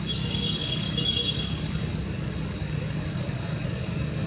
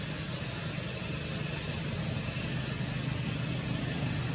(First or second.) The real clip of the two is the second